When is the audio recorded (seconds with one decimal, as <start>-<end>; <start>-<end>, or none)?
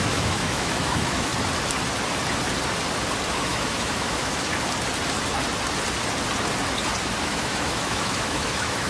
1.3-3.3; 4.5-7.2